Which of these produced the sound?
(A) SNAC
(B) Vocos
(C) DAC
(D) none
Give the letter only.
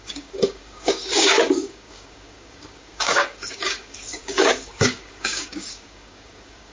C